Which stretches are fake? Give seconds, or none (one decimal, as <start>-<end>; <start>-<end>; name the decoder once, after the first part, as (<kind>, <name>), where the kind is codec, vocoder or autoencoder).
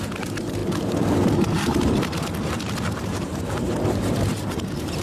0.0-5.0 (vocoder, BigVGAN v2)